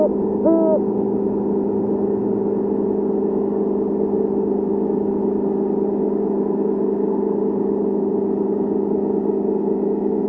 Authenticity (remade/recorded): recorded